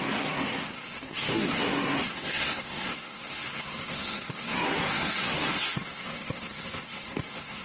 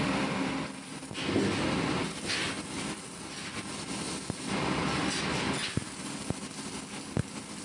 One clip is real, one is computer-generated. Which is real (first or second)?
second